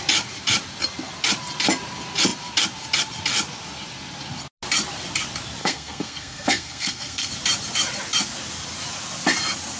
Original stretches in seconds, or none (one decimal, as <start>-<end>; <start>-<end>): 0.0-5.6; 7.3-9.8